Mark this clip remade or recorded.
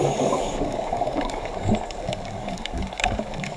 remade